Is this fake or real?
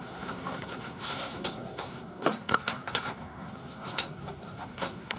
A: fake